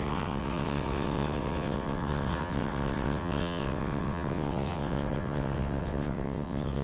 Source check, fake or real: fake